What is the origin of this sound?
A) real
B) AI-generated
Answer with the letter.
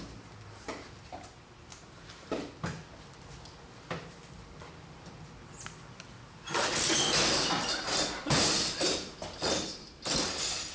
A